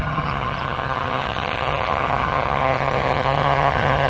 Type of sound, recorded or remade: remade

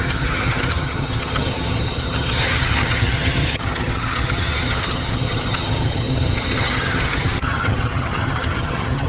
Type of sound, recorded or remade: remade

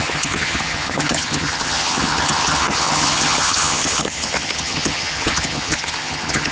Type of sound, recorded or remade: remade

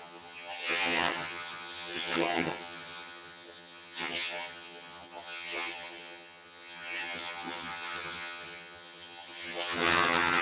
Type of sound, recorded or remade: remade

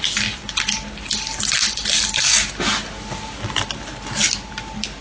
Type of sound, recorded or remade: recorded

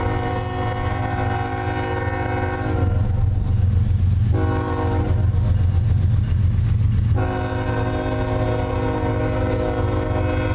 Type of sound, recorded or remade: recorded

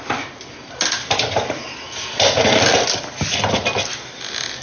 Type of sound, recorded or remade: recorded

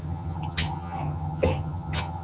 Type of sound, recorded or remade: remade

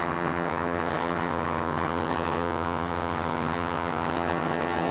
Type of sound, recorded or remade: remade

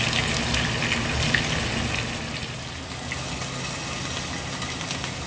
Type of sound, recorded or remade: recorded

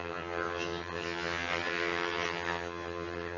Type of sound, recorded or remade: remade